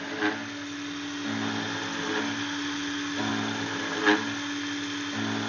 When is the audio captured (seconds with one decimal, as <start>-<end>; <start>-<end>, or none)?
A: 0.0-5.5

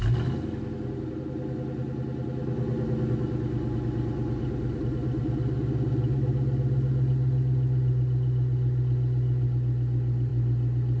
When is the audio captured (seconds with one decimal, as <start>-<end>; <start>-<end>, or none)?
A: 0.0-11.0

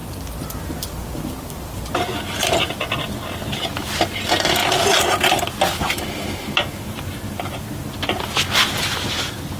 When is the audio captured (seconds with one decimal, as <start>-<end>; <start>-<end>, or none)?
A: 0.0-9.6

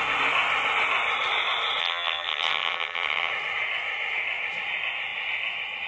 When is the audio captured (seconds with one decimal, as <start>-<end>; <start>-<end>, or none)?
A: 0.0-1.8; 3.3-5.9

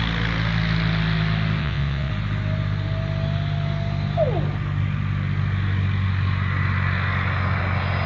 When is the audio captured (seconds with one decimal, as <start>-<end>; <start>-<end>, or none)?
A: 0.0-1.6; 2.1-8.1